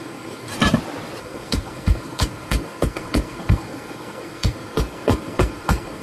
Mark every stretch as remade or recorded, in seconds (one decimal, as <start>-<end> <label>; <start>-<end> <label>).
0.0-0.5 remade; 0.5-1.2 recorded; 1.2-6.0 remade